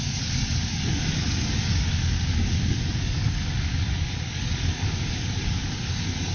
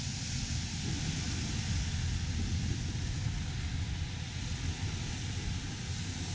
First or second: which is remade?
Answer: first